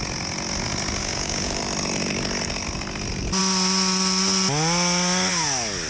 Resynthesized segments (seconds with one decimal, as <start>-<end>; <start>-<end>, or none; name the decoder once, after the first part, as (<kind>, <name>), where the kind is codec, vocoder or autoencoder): 1.0-1.6 (codec, DAC)